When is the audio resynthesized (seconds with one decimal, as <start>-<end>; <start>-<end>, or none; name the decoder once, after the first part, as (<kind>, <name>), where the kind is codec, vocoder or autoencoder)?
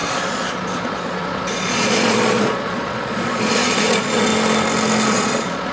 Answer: 0.0-4.3 (vocoder, Vocos); 5.1-5.7